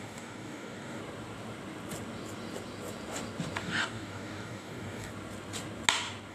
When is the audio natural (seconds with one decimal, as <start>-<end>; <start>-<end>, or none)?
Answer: 1.0-3.6; 5.1-6.3